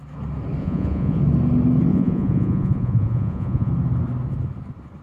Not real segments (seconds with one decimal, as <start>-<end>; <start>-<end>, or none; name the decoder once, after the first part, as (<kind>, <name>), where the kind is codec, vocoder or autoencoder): 0.6-1.2 (vocoder, Vocos); 1.9-3.7

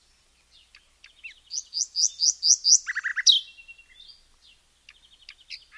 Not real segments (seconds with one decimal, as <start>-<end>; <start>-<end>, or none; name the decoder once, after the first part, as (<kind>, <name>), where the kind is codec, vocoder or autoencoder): none